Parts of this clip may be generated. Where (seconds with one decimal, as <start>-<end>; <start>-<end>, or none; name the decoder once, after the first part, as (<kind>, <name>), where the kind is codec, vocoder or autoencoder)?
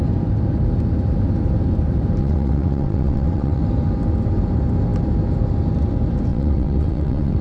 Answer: 2.2-3.6 (vocoder, WaveNeXt); 6.3-7.4